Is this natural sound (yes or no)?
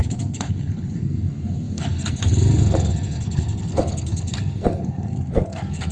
no